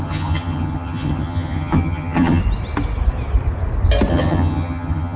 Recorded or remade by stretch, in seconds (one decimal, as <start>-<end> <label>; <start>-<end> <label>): 0.0-2.4 remade; 2.4-4.1 recorded; 4.1-5.2 remade